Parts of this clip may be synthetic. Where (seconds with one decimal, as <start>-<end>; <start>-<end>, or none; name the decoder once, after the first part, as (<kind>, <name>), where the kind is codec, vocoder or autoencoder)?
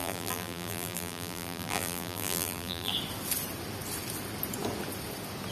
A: 0.0-2.9 (vocoder, BigVGAN v2)